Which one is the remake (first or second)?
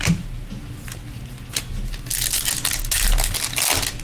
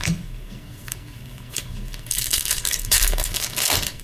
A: second